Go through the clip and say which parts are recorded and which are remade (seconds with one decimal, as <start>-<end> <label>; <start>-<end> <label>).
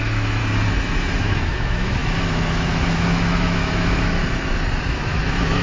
0.0-0.4 remade; 0.4-1.2 recorded; 1.2-4.2 remade; 4.2-4.9 recorded; 4.9-5.6 remade